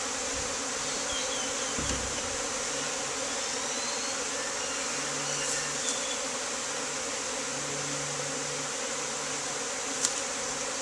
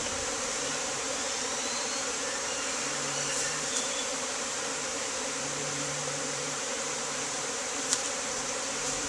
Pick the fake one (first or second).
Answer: second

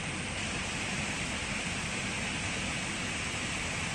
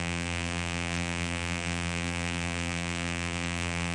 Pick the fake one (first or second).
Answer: second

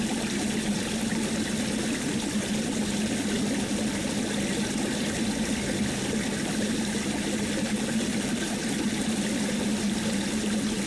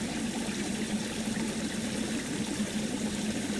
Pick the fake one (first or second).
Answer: second